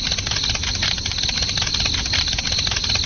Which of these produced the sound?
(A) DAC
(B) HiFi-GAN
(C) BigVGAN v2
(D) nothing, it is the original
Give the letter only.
D